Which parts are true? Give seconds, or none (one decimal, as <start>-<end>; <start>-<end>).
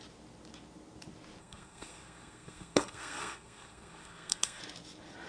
0.0-1.4; 4.6-5.3